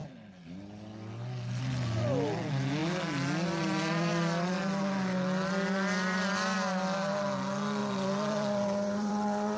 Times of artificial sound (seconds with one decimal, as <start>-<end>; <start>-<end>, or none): 7.8-9.6